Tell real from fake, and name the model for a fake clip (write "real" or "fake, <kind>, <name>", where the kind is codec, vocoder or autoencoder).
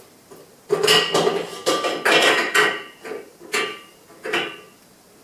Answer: real